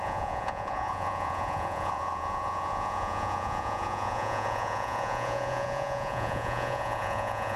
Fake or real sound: fake